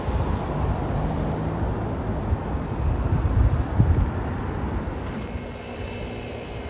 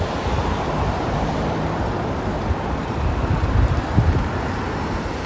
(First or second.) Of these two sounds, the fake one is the second